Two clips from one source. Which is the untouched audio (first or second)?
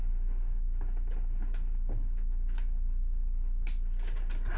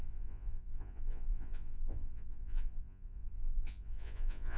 first